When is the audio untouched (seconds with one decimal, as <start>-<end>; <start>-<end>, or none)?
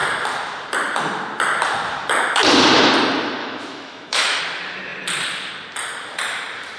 0.0-3.4; 4.4-6.8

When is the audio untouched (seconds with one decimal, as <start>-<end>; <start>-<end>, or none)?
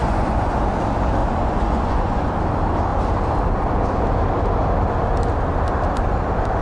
0.6-1.2; 2.3-6.6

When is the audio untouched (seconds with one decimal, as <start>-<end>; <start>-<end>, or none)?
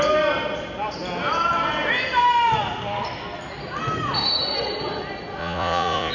0.0-5.4